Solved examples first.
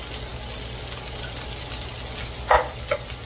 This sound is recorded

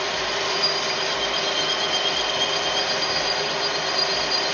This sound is recorded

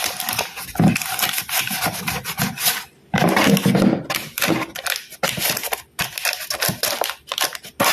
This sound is recorded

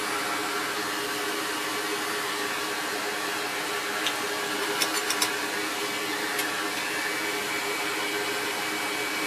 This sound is recorded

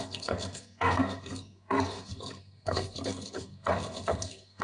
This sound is remade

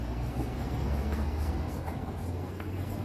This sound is remade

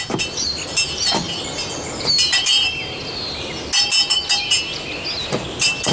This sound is recorded